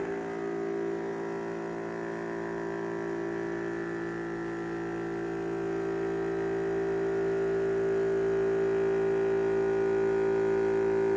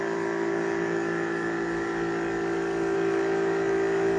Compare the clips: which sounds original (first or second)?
first